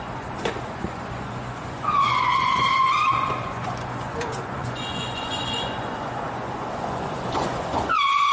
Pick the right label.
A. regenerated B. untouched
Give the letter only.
A